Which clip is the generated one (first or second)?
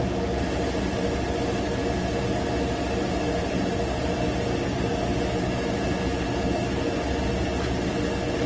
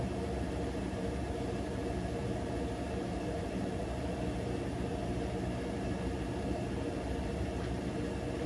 second